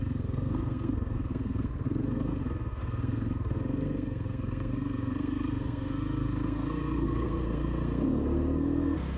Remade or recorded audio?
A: remade